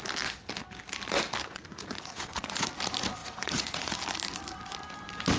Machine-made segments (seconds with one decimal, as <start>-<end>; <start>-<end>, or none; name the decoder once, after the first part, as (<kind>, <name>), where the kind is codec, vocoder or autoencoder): 1.4-2.7 (vocoder, Vocos); 3.2-3.9